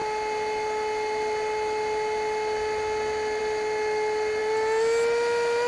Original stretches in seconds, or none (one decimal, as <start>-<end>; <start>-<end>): 0.0-5.7